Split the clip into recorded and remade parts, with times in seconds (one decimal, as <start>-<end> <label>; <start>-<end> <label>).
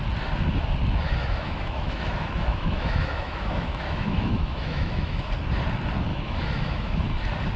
0.0-1.2 recorded; 1.2-5.3 remade; 5.3-6.1 recorded; 6.1-7.0 remade; 7.0-7.6 recorded